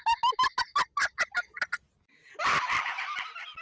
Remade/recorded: recorded